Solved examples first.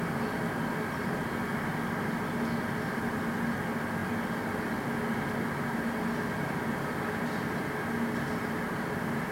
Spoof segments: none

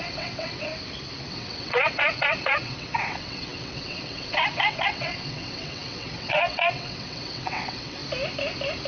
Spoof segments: 0.0-0.7 (vocoder, WaveNeXt); 1.3-8.0

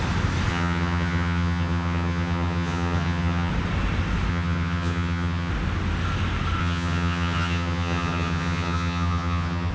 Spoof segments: 0.5-3.5 (vocoder, HiFi-GAN); 4.3-5.5; 6.6-9.7

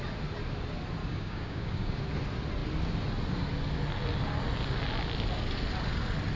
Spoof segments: 1.0-2.0 (codec, DAC)

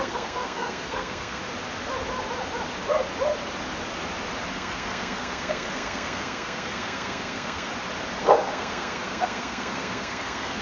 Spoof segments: 0.0-1.4 (codec, SNAC); 4.5-7.7; 8.2-10.6